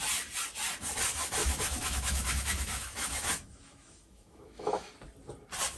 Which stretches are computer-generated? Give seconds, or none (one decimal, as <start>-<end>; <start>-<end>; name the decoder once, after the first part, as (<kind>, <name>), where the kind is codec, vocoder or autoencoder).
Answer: 1.4-4.9 (autoencoder, DAC-VAE)